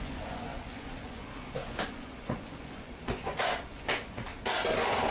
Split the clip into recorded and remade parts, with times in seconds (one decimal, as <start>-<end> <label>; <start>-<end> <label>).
0.0-4.3 remade; 4.3-5.1 recorded